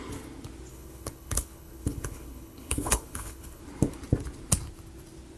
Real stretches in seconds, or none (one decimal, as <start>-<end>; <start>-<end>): 0.0-0.7; 3.6-5.4